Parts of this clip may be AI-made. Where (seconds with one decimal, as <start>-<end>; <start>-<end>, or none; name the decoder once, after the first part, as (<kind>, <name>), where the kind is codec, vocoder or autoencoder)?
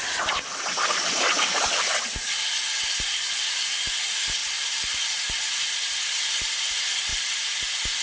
4.4-5.6 (vocoder, BigVGAN v2); 7.1-8.0